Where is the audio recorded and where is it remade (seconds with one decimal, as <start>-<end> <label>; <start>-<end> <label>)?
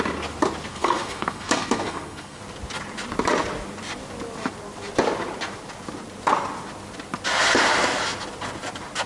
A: 0.0-0.7 recorded; 0.7-2.4 remade; 2.4-9.1 recorded